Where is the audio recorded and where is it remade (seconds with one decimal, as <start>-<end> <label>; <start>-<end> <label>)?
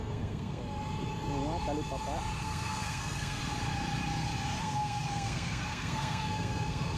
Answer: 0.0-0.6 remade; 0.6-2.4 recorded; 2.4-3.4 remade; 3.4-4.6 recorded; 4.6-7.0 remade